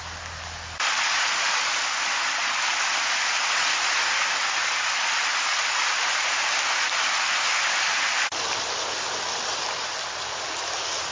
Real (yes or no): yes